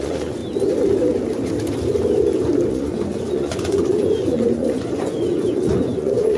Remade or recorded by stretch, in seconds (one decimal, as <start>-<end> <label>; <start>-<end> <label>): 0.0-0.4 remade; 0.4-2.7 recorded; 2.7-6.4 remade